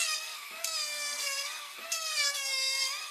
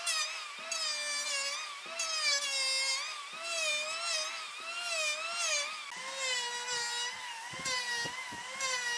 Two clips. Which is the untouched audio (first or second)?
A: second